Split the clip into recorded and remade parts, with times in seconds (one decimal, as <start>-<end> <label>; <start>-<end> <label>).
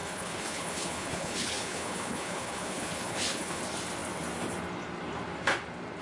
0.0-3.6 remade; 3.6-6.0 recorded